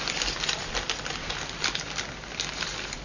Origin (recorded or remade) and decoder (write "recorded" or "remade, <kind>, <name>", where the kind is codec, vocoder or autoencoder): recorded